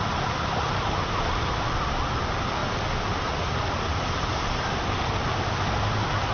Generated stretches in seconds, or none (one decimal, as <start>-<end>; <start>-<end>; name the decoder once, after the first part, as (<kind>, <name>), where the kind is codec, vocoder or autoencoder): none